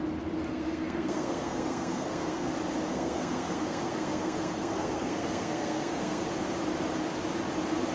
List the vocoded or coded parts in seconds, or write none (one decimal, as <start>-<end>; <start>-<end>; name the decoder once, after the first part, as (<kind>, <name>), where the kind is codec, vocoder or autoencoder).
0.5-2.5 (codec, SNAC); 2.9-6.3